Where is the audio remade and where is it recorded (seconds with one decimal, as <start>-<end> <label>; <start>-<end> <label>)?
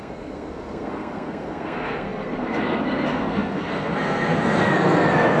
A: 0.0-5.4 remade